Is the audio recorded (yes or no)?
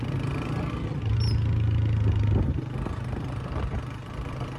yes